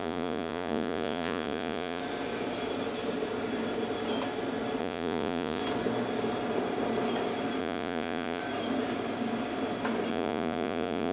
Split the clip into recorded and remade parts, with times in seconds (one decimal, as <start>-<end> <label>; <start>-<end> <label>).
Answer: 0.0-2.0 remade; 2.0-4.8 recorded; 4.8-5.6 remade; 5.6-7.6 recorded; 7.6-8.4 remade; 8.4-10.1 recorded; 10.1-11.1 remade